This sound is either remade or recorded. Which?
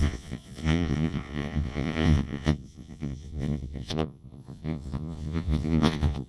remade